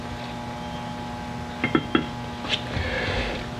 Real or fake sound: real